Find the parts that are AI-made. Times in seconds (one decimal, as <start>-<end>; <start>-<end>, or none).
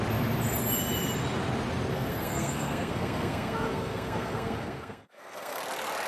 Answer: 1.9-5.6